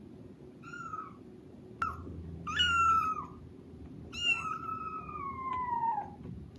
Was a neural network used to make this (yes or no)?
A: no